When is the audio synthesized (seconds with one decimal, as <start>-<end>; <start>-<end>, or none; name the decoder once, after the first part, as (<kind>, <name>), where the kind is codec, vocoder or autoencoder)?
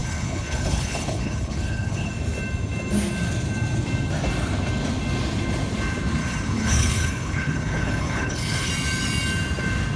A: 0.0-2.1 (codec, HILCodec); 6.2-8.7